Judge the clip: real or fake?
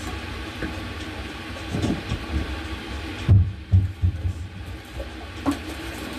fake